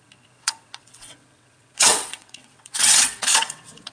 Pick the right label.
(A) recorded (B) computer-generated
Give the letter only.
B